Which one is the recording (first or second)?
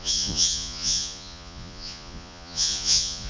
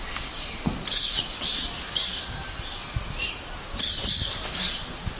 second